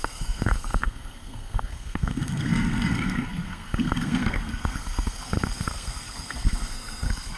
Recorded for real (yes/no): no